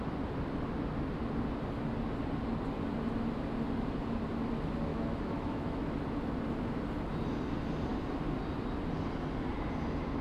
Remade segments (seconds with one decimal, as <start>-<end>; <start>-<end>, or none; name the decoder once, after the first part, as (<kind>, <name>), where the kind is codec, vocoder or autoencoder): 4.9-5.9 (autoencoder, DAC-VAE)